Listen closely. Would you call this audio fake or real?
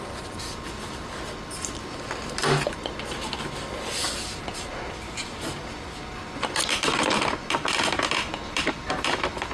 real